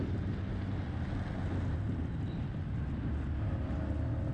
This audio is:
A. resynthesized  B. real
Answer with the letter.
B